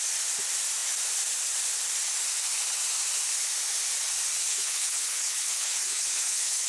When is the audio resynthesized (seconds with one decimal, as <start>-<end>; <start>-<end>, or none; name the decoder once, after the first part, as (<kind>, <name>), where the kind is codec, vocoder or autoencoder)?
4.5-6.7 (codec, HILCodec)